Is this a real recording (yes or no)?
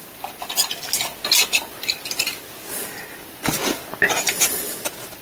yes